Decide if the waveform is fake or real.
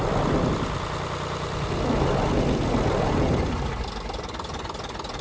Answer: real